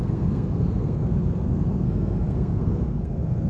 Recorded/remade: remade